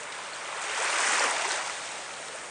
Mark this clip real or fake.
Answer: real